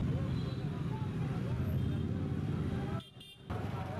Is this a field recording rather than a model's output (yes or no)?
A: yes